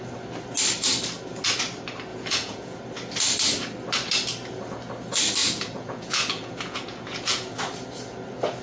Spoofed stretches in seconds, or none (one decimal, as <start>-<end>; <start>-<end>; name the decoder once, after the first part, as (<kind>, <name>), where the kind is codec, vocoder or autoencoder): 2.1-2.8 (vocoder, Vocos); 5.4-7.6